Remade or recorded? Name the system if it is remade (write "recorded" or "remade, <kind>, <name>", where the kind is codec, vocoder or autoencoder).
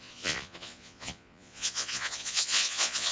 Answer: remade, vocoder, Vocos